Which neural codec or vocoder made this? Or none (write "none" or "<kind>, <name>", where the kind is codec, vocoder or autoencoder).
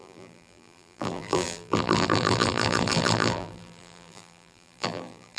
vocoder, BigVGAN v2